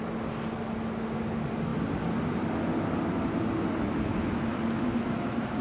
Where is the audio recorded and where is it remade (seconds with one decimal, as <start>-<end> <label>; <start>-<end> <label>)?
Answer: 0.0-5.6 recorded